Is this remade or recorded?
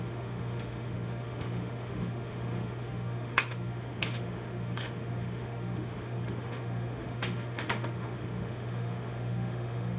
remade